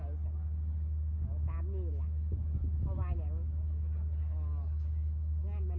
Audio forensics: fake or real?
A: real